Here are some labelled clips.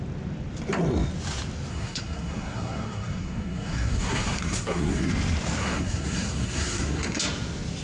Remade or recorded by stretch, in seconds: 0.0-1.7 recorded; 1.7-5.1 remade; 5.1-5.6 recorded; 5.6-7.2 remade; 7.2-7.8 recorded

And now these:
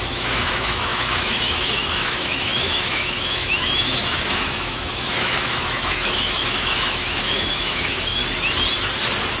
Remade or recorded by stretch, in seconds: 0.0-8.2 remade; 8.2-9.4 recorded

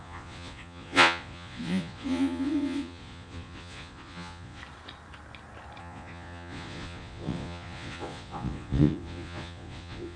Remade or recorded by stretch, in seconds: 0.0-4.6 remade; 4.6-5.8 recorded; 5.8-10.2 remade

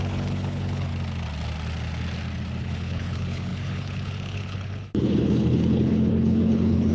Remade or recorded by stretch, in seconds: 0.0-0.9 remade; 0.9-2.6 recorded; 2.6-6.9 remade

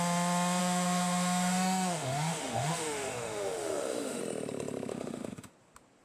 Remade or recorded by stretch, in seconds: 0.0-0.6 recorded; 0.6-4.2 remade; 4.2-4.9 recorded; 4.9-5.5 remade; 5.5-6.0 recorded